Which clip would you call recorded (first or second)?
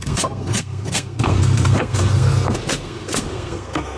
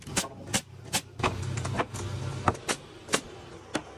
second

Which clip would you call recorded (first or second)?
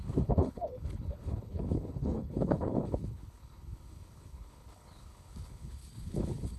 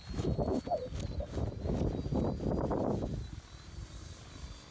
second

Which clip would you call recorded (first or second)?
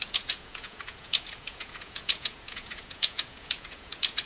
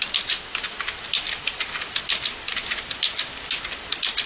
second